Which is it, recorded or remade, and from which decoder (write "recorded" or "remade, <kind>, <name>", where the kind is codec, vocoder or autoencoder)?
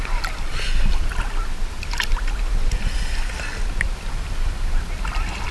recorded